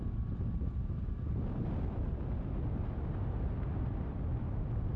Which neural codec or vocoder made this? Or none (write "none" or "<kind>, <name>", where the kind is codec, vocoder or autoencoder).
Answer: none